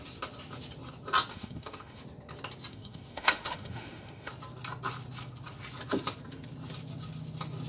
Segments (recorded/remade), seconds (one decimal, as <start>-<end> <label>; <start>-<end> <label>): 0.0-1.3 recorded; 1.3-2.0 remade; 2.0-2.7 recorded; 2.7-4.3 remade; 4.3-7.7 recorded